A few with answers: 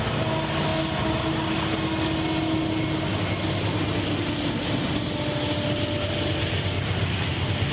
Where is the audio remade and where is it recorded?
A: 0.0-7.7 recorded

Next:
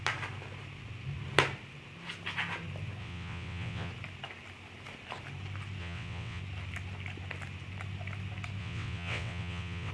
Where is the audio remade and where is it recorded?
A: 0.0-3.0 recorded; 3.0-3.9 remade; 3.9-5.8 recorded; 5.8-6.4 remade; 6.4-8.6 recorded; 8.6-9.9 remade

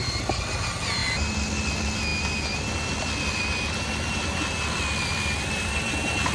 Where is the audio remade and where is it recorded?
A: 0.0-6.3 recorded